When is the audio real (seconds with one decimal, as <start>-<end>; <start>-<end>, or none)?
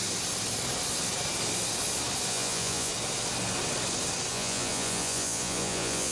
0.0-2.3; 2.9-4.3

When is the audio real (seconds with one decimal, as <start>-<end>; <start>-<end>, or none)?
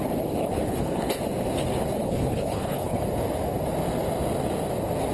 0.0-0.4; 1.2-2.0; 3.0-5.1